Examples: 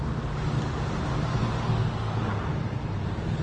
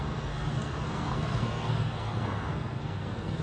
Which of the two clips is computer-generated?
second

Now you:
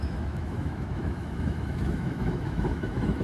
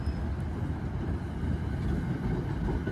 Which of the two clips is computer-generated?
first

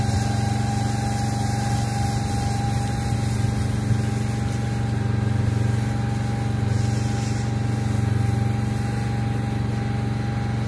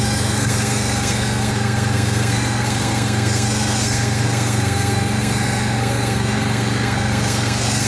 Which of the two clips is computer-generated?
second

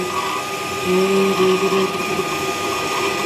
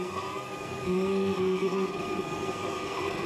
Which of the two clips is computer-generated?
second